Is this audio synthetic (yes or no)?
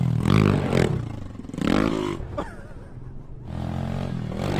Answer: no